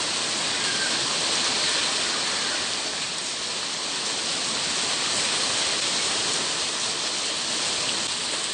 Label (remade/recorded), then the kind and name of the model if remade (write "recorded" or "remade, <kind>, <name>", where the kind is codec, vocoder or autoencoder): recorded